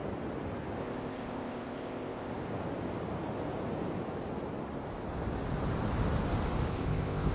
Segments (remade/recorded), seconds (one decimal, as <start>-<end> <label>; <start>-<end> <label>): 0.0-0.8 recorded; 0.8-2.3 remade; 2.3-6.7 recorded; 6.7-7.3 remade